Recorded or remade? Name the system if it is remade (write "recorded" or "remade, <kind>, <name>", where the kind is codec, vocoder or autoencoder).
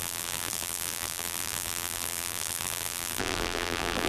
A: remade, vocoder, BigVGAN v2